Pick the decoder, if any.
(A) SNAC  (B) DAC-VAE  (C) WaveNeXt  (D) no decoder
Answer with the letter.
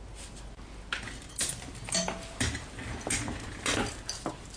D